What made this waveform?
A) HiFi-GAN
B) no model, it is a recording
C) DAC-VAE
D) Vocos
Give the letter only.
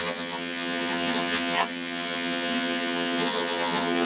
A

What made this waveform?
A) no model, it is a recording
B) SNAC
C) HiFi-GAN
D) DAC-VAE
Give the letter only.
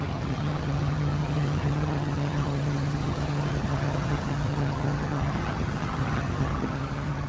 C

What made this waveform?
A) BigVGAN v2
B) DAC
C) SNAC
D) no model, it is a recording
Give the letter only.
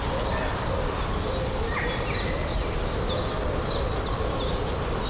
D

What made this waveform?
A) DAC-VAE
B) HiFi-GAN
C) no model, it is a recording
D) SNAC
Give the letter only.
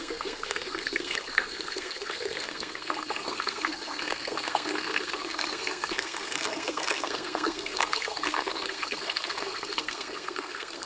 D